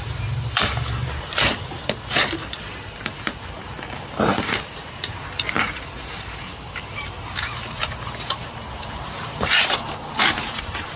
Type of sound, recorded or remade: remade